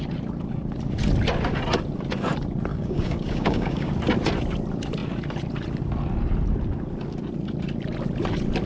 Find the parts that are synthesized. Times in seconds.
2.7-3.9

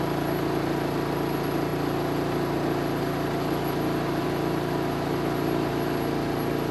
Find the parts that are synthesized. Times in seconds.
none

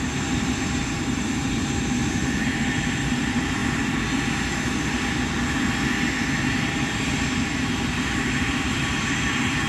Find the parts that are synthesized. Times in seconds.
0.0-3.6; 6.7-9.7

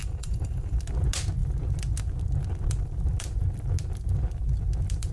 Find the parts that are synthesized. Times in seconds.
0.0-0.8

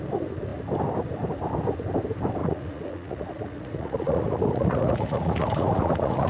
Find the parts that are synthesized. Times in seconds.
2.4-6.3